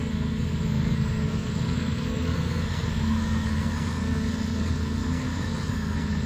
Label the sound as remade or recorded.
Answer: remade